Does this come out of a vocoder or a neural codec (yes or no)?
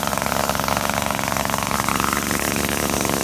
yes